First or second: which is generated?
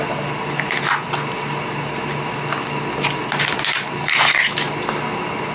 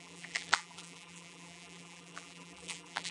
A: second